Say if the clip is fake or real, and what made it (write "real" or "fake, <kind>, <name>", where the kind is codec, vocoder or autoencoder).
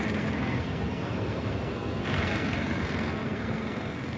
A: fake, codec, SNAC